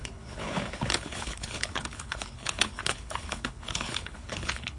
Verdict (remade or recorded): remade